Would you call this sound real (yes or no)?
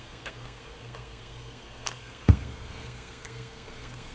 no